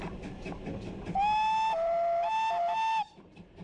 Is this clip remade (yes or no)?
no